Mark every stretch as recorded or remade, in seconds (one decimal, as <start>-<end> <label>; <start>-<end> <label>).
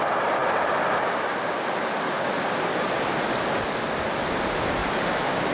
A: 0.0-4.8 recorded; 4.8-5.5 remade